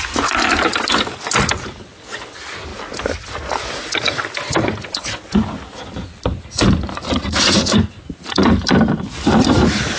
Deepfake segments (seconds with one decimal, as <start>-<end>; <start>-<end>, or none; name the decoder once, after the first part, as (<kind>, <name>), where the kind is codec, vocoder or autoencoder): none